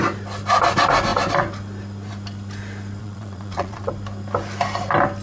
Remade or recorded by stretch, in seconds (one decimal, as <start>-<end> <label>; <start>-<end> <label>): 0.0-3.0 recorded; 3.0-3.9 remade; 3.9-5.2 recorded

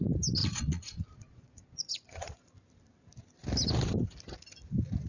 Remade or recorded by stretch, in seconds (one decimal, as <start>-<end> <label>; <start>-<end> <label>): 0.0-0.4 recorded; 0.4-2.5 remade; 2.5-5.1 recorded

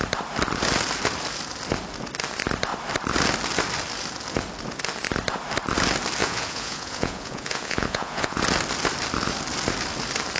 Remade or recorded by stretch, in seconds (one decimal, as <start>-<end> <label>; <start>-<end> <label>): 0.0-6.2 recorded; 6.2-8.4 remade; 8.4-10.4 recorded

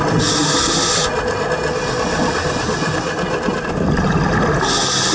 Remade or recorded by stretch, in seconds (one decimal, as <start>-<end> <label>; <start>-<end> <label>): 0.0-5.1 recorded

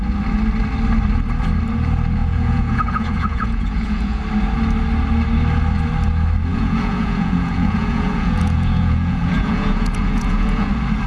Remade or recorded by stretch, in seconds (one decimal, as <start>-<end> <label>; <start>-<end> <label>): 0.0-2.2 recorded; 2.2-4.2 remade; 4.2-6.5 recorded; 6.5-10.7 remade; 10.7-11.1 recorded

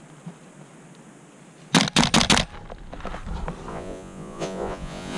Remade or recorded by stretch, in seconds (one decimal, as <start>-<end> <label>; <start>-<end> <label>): 0.0-3.7 recorded; 3.7-5.2 remade

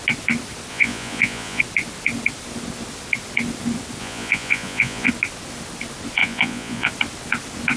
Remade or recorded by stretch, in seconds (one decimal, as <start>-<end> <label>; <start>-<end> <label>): 0.0-0.7 recorded; 0.7-1.6 remade; 1.6-4.0 recorded; 4.0-5.1 remade; 5.1-6.2 recorded; 6.2-6.9 remade; 6.9-7.8 recorded

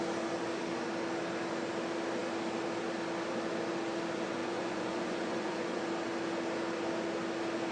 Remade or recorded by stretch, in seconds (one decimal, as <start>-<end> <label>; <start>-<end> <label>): 0.0-4.4 recorded; 4.4-5.8 remade; 5.8-7.7 recorded